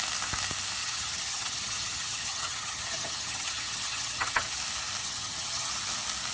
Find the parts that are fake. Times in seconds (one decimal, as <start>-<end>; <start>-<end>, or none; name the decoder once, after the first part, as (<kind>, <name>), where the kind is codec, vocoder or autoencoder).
0.8-4.6 (vocoder, HiFi-GAN); 5.0-5.7